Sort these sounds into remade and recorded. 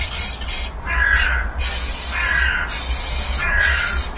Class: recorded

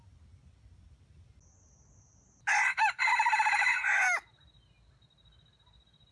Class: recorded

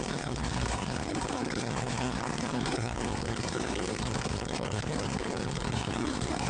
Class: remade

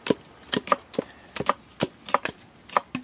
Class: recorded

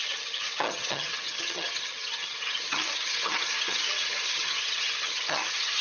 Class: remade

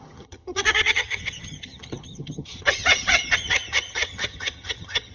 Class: remade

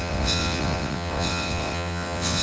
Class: remade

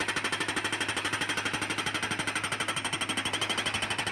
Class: recorded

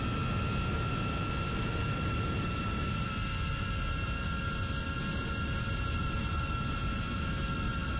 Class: recorded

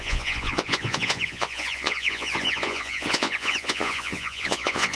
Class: remade